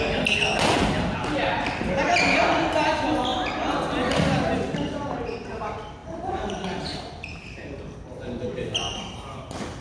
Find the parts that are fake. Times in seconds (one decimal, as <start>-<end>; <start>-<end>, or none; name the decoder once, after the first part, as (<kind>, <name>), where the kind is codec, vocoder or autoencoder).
6.0-6.6 (vocoder, BigVGAN v2)